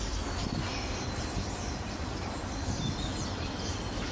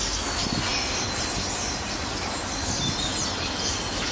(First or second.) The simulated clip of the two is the first